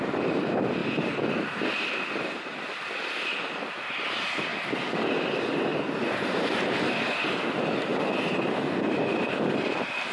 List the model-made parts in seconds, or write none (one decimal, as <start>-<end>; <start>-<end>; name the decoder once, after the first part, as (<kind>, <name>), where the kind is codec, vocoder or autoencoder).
0.0-0.8 (vocoder, BigVGAN v2); 2.2-4.5; 5.0-7.9; 9.0-10.1